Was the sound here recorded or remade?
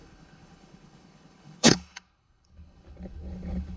remade